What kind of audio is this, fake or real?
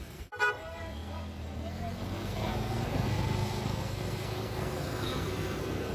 fake